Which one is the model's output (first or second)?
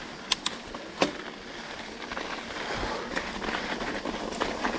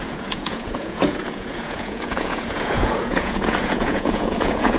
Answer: second